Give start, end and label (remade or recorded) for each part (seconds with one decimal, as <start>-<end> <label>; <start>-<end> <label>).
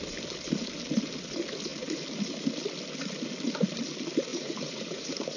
0.0-4.3 recorded; 4.3-5.4 remade